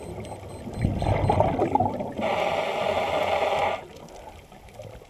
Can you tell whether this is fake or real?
real